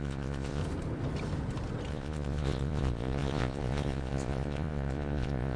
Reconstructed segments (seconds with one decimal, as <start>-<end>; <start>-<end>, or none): 0.0-0.6; 1.9-5.6